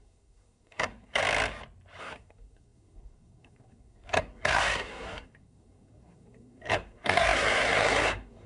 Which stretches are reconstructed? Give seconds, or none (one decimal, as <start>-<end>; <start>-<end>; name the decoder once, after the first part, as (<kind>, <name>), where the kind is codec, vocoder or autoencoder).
0.0-1.2 (codec, SNAC); 2.0-8.5